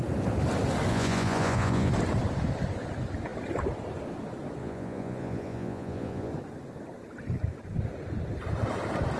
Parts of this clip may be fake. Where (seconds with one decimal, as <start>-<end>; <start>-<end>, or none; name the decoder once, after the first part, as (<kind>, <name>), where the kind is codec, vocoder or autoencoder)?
0.9-1.9 (vocoder, Vocos); 4.6-6.3